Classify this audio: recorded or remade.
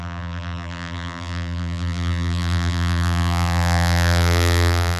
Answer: remade